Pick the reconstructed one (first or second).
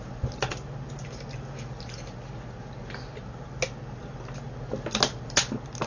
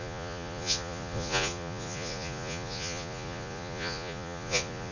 second